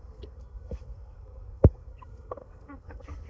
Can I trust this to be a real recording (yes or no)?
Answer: no